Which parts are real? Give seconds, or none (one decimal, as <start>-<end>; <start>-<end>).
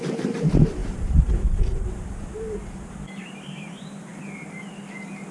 4.1-5.3